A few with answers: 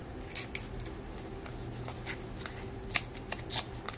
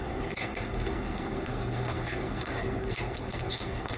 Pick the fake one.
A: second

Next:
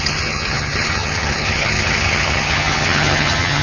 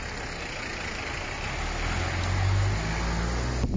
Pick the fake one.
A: first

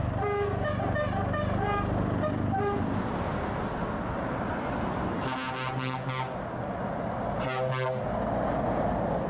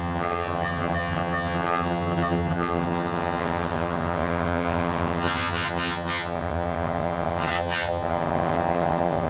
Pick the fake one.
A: second